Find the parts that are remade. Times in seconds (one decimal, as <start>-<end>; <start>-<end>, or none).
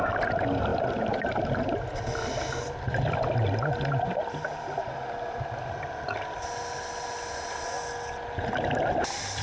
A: none